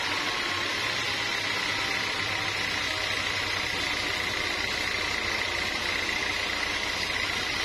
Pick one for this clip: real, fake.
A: real